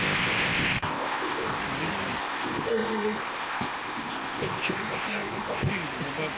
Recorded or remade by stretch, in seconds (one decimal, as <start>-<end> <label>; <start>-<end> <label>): 0.0-1.6 remade; 1.6-2.2 recorded; 2.2-5.7 remade; 5.7-6.4 recorded